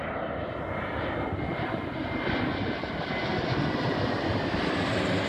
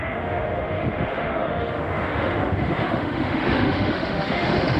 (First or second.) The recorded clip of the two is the first